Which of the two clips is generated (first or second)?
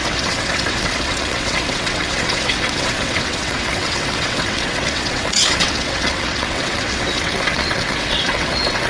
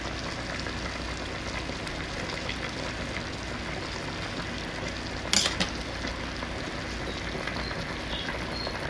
first